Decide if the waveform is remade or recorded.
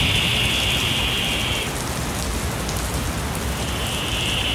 recorded